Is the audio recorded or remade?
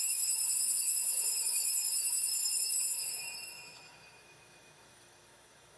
remade